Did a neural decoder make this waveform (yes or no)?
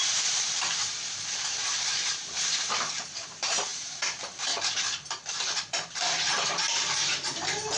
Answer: yes